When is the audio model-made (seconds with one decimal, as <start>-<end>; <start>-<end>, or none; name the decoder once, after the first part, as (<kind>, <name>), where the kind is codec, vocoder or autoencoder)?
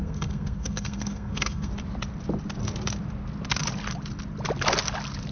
0.0-1.7 (codec, SNAC)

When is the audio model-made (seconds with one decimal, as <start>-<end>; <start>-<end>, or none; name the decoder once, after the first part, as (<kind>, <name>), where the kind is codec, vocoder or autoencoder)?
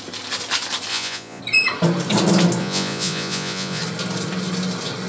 0.9-1.4 (vocoder, Vocos); 2.6-3.8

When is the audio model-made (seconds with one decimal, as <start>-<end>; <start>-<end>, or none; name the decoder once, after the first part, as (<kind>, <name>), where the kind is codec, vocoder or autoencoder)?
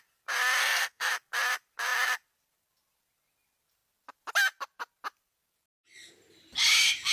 0.6-1.1 (codec, SNAC)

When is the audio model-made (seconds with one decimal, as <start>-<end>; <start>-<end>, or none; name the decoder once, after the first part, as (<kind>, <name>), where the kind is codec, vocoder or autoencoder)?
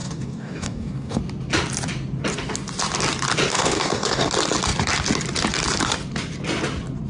0.0-1.2 (codec, DAC); 3.5-4.3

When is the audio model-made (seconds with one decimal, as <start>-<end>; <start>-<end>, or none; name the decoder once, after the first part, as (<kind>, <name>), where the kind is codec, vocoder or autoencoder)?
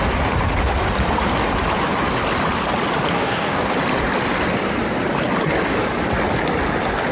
3.1-3.7 (codec, DAC)